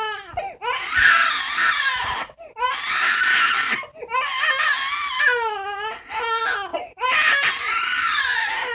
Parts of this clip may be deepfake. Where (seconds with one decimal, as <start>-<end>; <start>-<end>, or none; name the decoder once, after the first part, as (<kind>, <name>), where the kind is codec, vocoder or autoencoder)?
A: 1.6-3.2 (vocoder, BigVGAN v2); 6.7-7.5